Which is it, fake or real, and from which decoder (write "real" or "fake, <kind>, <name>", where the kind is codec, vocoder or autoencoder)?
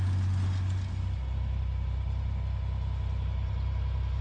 real